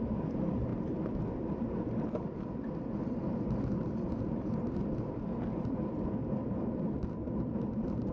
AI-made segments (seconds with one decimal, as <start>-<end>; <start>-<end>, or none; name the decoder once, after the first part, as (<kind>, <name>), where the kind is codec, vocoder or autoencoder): none